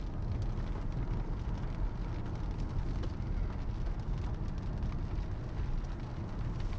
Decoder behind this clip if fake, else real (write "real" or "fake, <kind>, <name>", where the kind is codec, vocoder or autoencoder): real